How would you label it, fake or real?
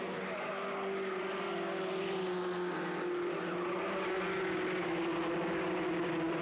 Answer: real